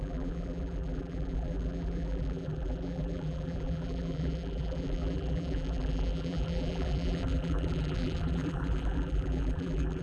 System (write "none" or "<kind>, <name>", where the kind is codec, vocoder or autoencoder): vocoder, BigVGAN v2